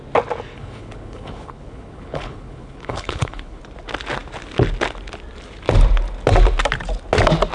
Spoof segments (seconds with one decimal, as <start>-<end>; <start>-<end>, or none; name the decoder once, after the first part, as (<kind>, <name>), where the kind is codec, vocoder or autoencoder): 0.5-3.6 (codec, HILCodec)

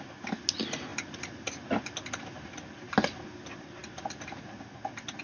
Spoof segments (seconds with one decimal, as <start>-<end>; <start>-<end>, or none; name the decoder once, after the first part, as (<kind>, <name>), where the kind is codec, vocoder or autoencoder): none

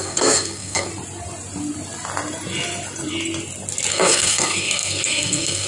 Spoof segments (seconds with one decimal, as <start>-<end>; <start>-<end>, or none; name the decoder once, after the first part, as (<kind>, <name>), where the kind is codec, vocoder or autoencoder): 0.0-0.9 (codec, SNAC); 3.9-5.7

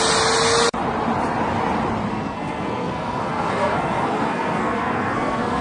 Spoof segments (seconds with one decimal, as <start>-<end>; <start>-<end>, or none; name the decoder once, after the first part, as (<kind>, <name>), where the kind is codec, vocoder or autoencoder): 2.1-5.6 (codec, SNAC)

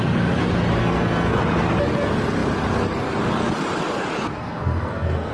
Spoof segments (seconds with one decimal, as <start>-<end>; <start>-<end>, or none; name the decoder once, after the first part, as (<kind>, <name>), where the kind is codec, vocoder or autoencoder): 0.8-1.4 (codec, SNAC); 4.4-5.3

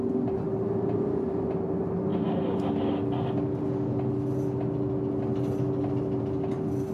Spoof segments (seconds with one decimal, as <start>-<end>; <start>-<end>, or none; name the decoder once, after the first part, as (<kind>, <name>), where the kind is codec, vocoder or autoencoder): none

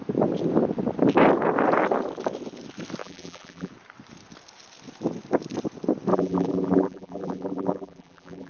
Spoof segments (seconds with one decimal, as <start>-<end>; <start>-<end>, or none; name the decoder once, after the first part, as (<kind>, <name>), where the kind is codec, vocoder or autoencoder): 3.0-3.7 (vocoder, BigVGAN v2); 6.1-8.5

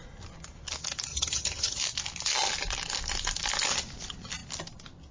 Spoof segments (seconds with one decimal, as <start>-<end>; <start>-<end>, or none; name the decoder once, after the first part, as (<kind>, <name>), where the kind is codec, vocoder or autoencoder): 1.1-1.8 (vocoder, HiFi-GAN)